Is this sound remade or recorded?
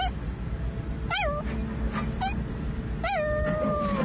recorded